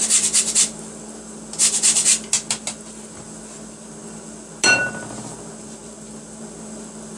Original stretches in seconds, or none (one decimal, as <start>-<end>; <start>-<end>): 0.0-7.2